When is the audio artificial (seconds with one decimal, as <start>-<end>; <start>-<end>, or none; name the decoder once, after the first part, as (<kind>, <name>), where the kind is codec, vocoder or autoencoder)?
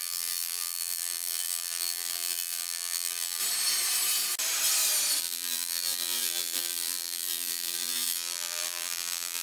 0.0-3.4 (vocoder, BigVGAN v2); 5.2-9.4